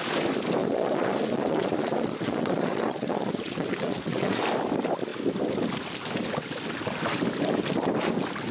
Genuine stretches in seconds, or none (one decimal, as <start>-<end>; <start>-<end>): 0.0-0.6; 4.4-8.5